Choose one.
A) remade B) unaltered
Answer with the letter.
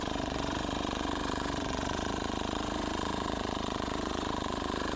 A